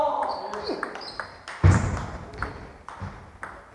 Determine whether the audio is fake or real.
real